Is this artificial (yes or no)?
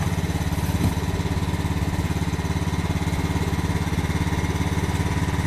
no